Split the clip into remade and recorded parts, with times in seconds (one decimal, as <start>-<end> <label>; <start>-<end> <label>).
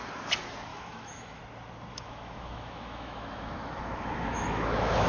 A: 0.0-0.7 recorded; 0.7-1.4 remade; 1.4-1.9 recorded; 1.9-5.1 remade